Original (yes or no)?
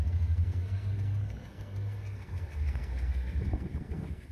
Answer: no